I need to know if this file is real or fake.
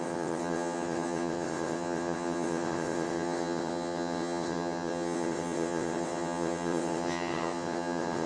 fake